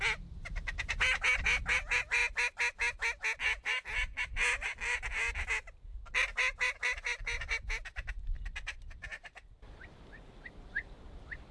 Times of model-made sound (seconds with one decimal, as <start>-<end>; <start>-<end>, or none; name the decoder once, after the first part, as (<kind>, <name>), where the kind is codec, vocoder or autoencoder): none